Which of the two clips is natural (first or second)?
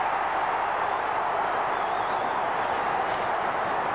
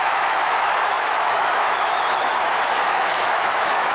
first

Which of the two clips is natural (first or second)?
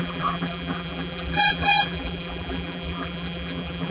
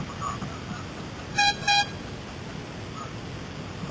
second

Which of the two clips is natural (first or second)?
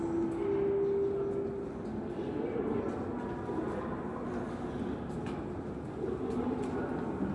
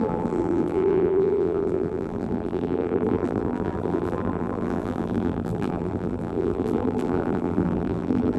first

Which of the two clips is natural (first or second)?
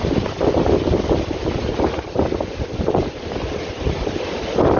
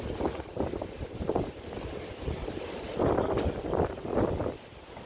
second